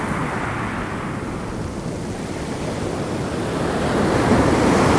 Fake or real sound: real